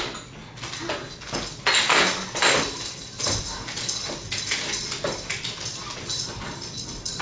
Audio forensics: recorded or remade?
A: recorded